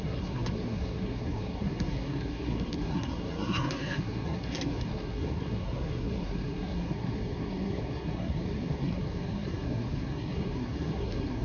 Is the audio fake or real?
fake